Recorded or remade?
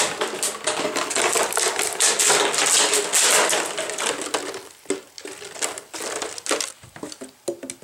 recorded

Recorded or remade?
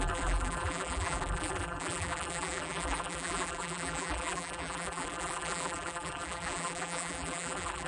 remade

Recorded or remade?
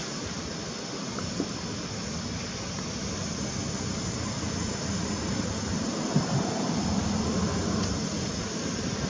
recorded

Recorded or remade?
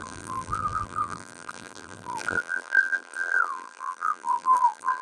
remade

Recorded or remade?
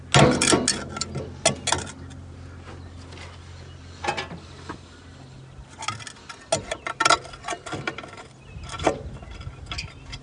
recorded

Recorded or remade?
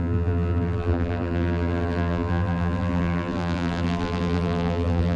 remade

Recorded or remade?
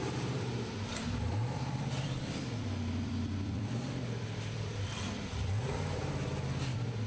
remade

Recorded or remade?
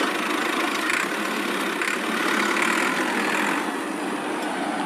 recorded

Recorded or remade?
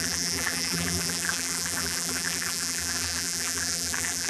remade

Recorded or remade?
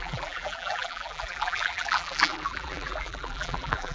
remade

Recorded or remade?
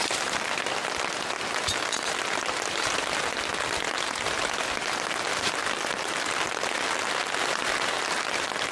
recorded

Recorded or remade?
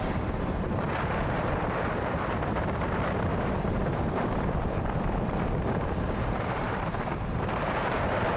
remade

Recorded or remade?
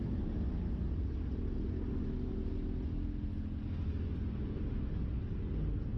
recorded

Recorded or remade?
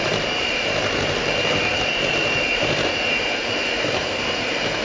remade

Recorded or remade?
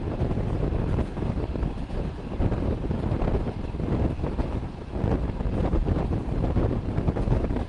remade